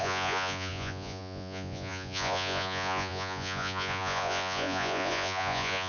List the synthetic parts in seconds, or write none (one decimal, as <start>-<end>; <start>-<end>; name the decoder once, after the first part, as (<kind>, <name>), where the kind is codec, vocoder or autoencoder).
0.0-5.9 (vocoder, Vocos)